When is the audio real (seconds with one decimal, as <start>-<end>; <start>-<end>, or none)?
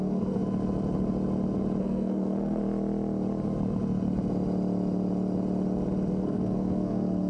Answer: 0.4-1.8; 2.6-6.1